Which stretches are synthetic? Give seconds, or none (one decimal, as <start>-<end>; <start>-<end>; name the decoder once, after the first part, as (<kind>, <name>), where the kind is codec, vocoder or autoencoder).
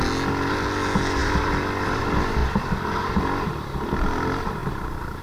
1.2-2.0 (vocoder, BigVGAN v2); 2.4-3.5; 4.6-5.2